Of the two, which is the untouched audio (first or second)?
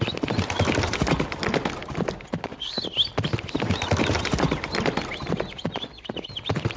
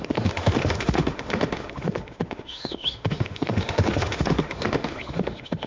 first